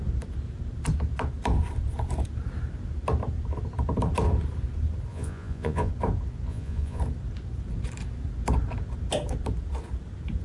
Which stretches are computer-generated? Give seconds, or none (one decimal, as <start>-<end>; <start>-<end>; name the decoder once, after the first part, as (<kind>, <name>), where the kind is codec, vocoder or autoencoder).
5.1-5.9 (vocoder, Vocos); 6.5-7.0